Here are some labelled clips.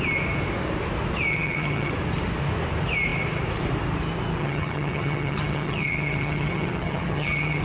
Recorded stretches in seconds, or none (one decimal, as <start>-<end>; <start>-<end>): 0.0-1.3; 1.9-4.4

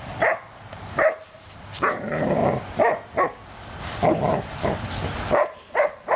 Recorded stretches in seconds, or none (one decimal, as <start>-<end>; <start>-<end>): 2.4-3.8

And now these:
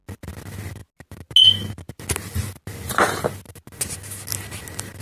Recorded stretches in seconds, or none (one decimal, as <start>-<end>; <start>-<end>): 0.0-5.0